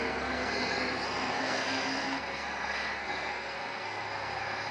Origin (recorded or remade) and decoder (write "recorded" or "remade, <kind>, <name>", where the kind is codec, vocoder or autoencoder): remade, codec, SNAC